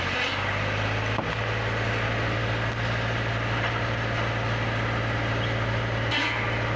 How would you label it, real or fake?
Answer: real